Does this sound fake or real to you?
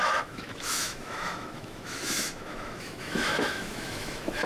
fake